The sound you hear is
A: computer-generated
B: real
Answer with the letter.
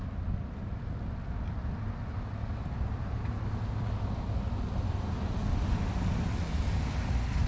B